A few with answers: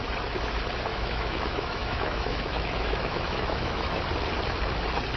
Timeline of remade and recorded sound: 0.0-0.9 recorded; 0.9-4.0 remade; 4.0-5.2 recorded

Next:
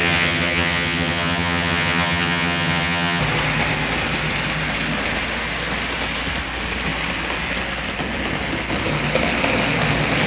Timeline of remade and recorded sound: 0.0-3.2 remade; 3.2-10.3 recorded